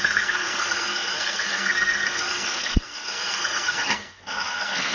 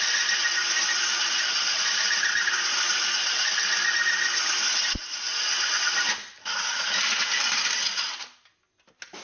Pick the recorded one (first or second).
second